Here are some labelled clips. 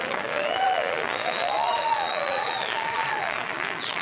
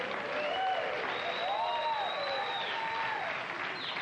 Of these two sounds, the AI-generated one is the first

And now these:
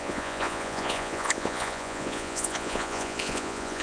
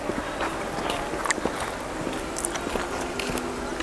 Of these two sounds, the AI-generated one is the first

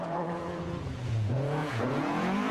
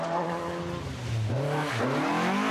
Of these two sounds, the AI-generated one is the first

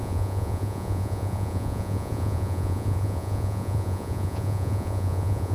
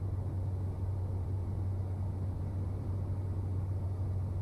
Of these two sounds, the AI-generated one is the first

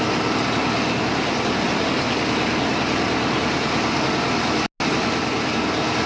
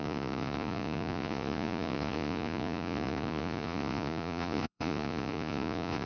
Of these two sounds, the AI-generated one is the second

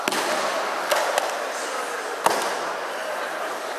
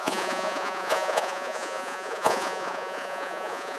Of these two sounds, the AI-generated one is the second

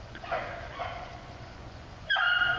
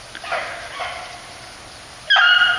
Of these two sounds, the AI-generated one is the first